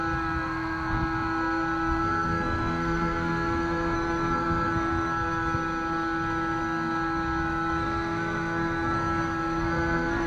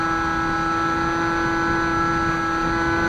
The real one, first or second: second